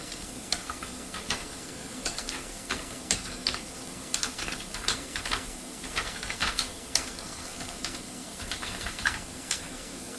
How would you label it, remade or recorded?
remade